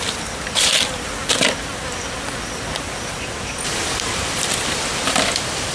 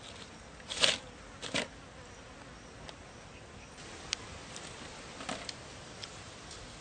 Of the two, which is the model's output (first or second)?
first